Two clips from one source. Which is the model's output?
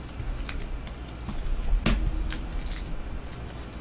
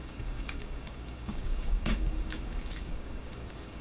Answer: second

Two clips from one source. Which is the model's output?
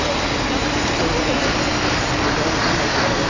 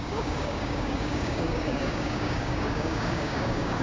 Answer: second